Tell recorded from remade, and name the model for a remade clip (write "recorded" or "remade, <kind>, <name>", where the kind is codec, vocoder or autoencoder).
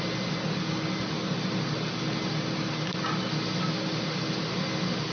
recorded